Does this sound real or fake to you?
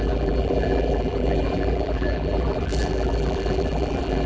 fake